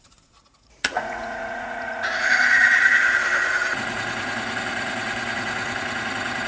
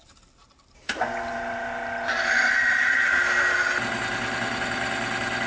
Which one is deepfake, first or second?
first